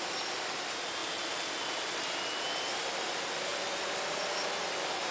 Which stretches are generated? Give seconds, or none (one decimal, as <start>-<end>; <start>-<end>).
none